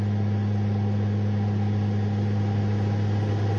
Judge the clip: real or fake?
real